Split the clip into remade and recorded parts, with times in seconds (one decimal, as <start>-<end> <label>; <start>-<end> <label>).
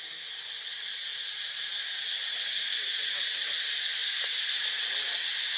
0.0-5.6 recorded